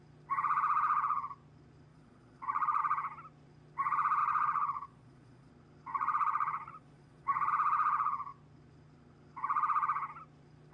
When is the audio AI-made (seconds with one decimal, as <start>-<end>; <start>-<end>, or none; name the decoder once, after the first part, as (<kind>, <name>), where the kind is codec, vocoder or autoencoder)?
1.9-2.8 (vocoder, Vocos); 4.2-5.5; 5.9-7.5